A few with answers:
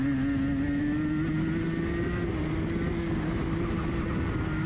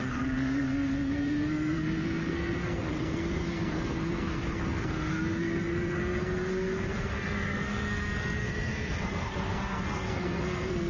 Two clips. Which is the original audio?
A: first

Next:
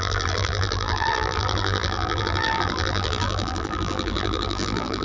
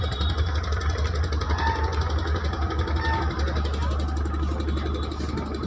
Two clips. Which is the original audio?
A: second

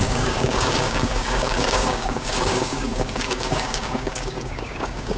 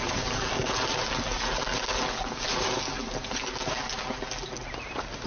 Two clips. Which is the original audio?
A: second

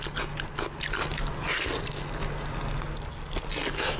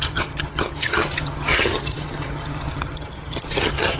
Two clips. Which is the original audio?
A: first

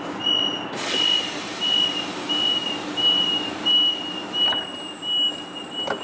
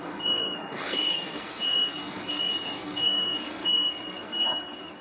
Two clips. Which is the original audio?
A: first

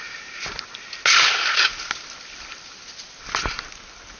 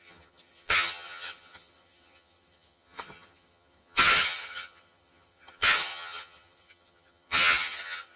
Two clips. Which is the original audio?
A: first